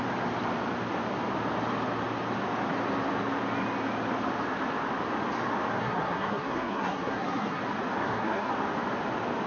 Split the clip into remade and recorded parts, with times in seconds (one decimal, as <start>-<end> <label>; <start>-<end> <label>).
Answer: 0.0-5.8 recorded; 5.8-7.6 remade; 7.6-8.0 recorded; 8.0-8.5 remade; 8.5-9.5 recorded